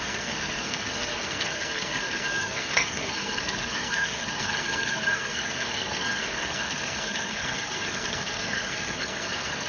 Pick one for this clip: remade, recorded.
remade